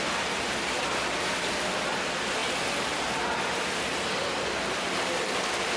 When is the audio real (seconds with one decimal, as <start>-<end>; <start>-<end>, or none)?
0.0-5.8